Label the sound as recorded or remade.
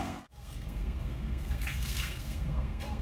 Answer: remade